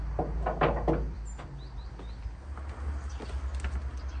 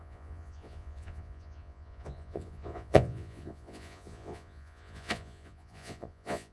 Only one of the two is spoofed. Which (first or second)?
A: second